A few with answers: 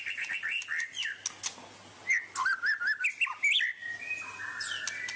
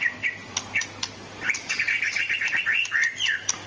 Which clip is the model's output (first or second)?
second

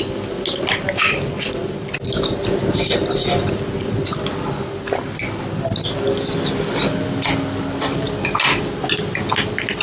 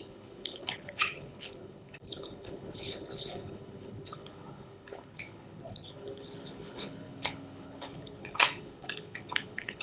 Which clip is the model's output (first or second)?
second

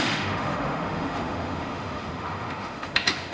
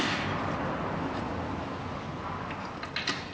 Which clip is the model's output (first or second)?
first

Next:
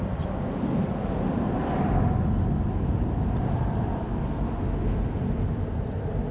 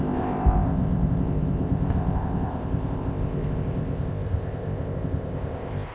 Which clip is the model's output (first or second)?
second